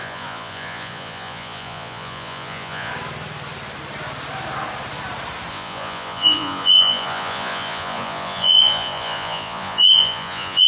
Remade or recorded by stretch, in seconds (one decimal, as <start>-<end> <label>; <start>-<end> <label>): 0.0-2.9 remade; 2.9-5.5 recorded; 5.5-10.7 remade

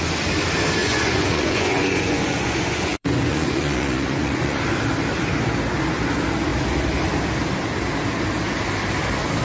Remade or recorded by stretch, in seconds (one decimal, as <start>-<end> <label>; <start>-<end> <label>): 0.0-0.8 recorded; 0.8-4.6 remade; 4.6-9.4 recorded

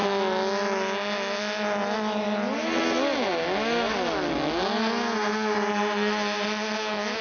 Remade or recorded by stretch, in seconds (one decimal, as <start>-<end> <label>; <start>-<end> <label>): 0.0-7.2 recorded

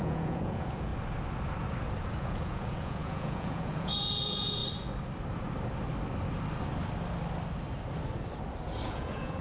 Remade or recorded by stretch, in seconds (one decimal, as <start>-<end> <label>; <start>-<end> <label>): 0.0-0.9 remade; 0.9-2.2 recorded; 2.2-4.6 remade; 4.6-8.9 recorded; 8.9-9.4 remade